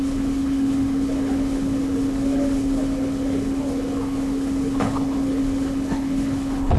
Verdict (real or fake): fake